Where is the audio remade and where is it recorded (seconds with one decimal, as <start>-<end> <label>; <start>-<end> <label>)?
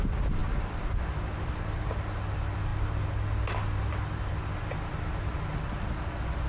0.0-6.5 recorded